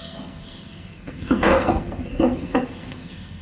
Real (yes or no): no